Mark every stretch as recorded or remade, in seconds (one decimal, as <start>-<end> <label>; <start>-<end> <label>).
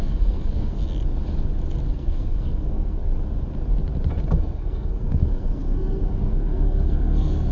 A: 0.0-0.8 remade; 0.8-1.9 recorded; 1.9-3.1 remade; 3.1-4.4 recorded; 4.4-7.5 remade